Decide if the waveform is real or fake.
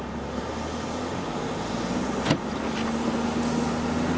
real